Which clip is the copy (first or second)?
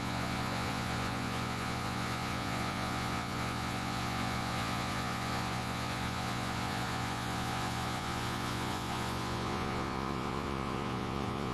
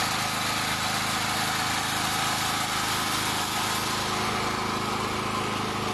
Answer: first